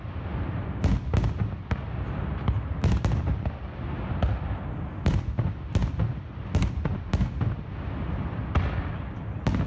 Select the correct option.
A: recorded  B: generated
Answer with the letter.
A